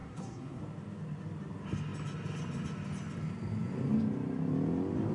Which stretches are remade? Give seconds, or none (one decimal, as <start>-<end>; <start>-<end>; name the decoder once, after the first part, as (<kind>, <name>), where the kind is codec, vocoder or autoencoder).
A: 0.0-0.6 (codec, SNAC)

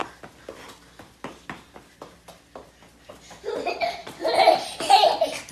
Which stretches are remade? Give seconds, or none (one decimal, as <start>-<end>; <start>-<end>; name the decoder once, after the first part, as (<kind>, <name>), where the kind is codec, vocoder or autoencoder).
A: 4.0-4.9 (vocoder, BigVGAN v2)

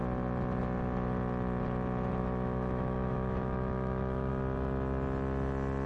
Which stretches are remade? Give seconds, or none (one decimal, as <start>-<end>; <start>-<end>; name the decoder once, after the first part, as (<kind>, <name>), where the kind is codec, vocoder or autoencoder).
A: 2.2-4.3 (autoencoder, DAC-VAE)

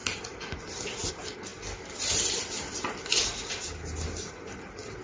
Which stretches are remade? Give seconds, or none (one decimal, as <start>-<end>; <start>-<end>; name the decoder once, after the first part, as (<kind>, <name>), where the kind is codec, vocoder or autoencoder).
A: none

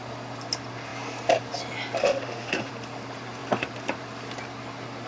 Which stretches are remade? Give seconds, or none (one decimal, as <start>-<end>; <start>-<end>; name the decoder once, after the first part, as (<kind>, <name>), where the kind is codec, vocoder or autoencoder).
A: 2.0-2.7 (autoencoder, DAC-VAE)

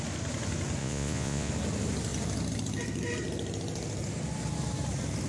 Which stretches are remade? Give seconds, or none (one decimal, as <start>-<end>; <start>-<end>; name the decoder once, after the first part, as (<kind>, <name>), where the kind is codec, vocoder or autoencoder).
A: 0.8-1.5 (vocoder, Vocos)

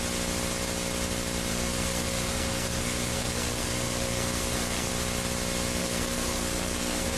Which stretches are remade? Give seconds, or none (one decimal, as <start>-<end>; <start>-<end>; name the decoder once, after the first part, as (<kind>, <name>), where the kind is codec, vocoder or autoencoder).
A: 1.5-4.9 (codec, SNAC); 5.8-7.2

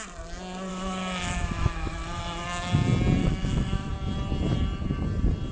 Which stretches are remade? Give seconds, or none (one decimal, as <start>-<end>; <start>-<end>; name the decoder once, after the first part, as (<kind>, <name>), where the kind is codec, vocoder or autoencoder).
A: 0.7-2.7 (autoencoder, DAC-VAE); 3.2-3.9